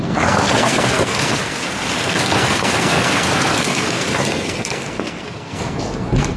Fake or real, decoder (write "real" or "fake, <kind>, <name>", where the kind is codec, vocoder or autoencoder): fake, codec, SNAC